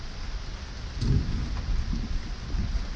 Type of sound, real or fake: real